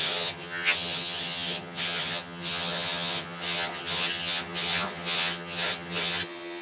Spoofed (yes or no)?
yes